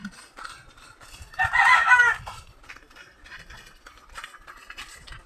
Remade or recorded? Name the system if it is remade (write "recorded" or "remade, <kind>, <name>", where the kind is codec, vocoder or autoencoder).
recorded